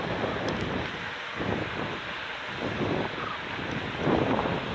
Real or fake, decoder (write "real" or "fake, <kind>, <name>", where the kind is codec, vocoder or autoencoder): real